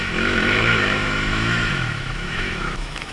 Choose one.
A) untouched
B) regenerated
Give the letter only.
B